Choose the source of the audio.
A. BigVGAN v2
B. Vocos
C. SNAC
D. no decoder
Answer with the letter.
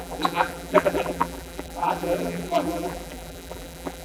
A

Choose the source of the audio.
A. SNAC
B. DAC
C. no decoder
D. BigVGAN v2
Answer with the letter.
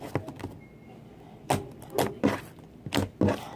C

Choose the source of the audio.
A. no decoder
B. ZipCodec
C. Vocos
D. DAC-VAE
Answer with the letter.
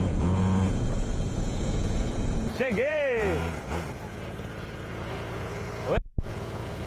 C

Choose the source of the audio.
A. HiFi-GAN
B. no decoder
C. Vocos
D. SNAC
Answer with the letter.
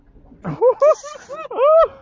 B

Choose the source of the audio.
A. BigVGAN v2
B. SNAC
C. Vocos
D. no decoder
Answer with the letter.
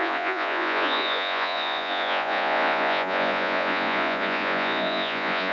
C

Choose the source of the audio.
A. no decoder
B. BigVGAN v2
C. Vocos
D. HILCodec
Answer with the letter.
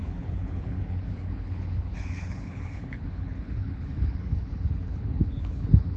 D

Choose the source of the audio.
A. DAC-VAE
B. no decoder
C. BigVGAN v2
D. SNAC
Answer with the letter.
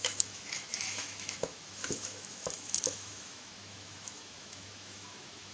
A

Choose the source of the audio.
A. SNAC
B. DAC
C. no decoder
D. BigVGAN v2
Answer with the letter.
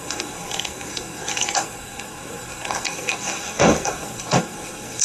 A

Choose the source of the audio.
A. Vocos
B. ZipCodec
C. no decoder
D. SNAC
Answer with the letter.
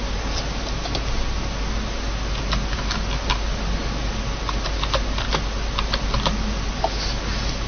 C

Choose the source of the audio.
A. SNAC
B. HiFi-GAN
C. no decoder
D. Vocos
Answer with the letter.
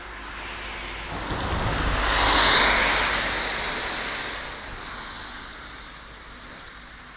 C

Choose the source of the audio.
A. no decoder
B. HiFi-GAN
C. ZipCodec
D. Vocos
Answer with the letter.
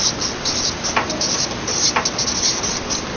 A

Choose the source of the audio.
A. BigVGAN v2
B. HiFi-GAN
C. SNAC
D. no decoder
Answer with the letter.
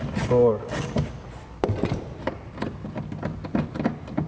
D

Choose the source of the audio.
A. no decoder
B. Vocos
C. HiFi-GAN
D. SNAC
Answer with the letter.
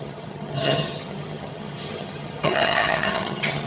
C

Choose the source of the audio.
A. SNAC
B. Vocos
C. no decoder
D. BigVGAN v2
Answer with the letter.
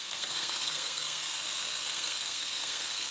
A